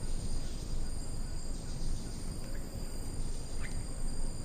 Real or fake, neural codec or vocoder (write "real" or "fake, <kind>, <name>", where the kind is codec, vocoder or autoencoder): real